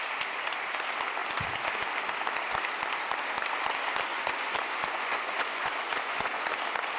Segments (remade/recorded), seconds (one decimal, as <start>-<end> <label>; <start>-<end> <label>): 0.0-4.1 recorded; 4.1-6.4 remade; 6.4-7.0 recorded